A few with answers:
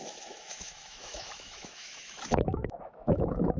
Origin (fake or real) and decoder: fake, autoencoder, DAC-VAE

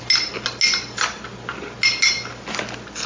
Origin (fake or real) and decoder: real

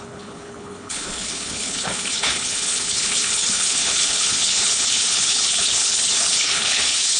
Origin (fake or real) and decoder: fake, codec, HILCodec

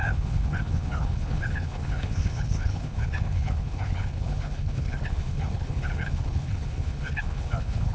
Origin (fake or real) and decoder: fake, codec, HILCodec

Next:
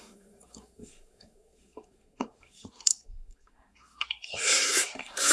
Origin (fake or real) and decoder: fake, codec, SNAC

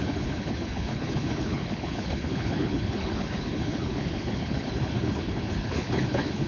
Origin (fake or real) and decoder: fake, codec, HILCodec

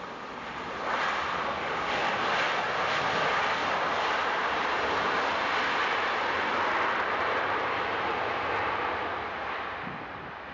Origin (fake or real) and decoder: real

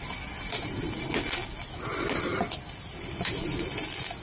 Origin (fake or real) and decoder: real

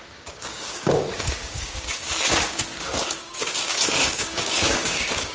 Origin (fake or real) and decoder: fake, codec, DAC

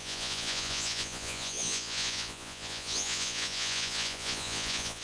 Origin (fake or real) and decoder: fake, vocoder, Vocos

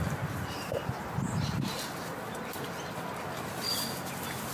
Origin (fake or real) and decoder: real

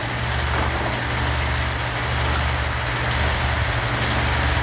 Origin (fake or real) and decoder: real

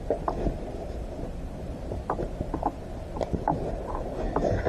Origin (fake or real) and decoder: fake, vocoder, BigVGAN v2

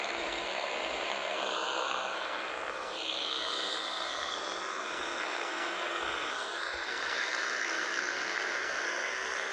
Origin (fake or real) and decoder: fake, codec, SNAC